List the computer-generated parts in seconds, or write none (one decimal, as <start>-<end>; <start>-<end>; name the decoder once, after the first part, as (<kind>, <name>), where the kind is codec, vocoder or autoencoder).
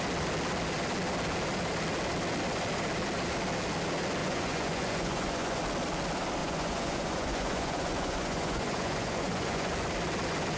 4.2-5.6 (vocoder, Vocos); 6.4-9.7